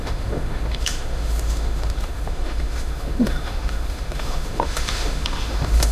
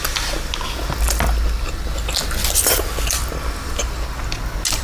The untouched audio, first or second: second